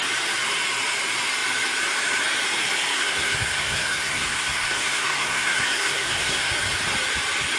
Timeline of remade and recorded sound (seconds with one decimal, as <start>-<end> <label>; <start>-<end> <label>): 0.0-2.9 recorded; 2.9-6.5 remade; 6.5-7.6 recorded